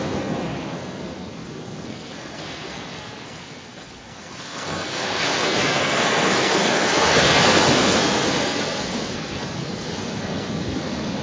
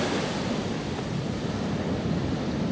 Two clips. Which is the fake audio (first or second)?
first